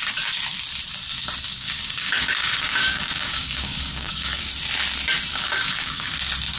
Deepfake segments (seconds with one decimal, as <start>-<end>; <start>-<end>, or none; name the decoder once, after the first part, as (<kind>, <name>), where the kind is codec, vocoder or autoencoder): 1.5-4.5 (codec, DAC); 5.3-6.1